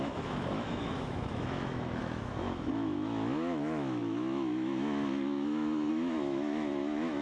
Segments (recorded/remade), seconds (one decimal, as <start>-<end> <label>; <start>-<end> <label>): 0.0-7.2 remade